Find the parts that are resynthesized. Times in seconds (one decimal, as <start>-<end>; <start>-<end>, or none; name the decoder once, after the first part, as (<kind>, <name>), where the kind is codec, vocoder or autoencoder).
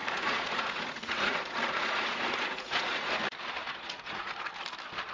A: 0.0-3.1 (vocoder, Vocos); 3.6-4.3